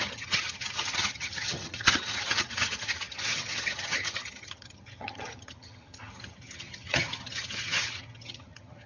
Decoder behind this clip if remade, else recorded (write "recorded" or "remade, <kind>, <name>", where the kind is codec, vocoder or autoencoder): remade, vocoder, HiFi-GAN